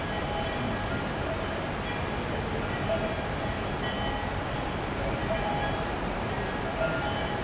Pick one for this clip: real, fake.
real